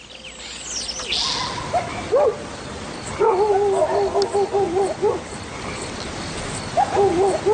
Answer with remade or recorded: recorded